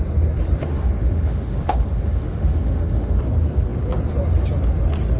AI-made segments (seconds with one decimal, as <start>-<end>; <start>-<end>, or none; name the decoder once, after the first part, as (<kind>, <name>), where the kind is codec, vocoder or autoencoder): 0.6-3.2 (autoencoder, DAC-VAE)